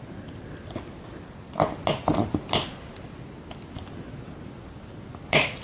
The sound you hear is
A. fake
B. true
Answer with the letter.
B